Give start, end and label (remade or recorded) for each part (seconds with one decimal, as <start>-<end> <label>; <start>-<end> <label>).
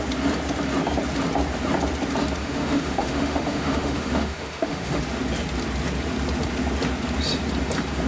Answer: 0.0-2.4 recorded; 2.4-5.0 remade; 5.0-8.1 recorded